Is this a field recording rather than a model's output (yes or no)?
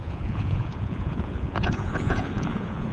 no